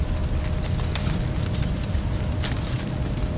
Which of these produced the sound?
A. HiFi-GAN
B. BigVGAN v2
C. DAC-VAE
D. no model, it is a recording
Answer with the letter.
D